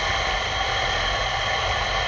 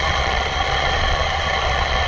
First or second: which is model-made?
second